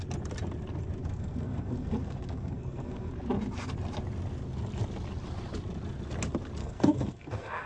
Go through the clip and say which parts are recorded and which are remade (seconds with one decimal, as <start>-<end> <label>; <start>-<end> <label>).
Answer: 0.0-1.0 recorded; 1.0-3.1 remade; 3.1-6.6 recorded; 6.6-7.7 remade